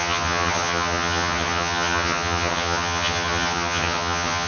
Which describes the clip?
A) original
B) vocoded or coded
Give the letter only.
B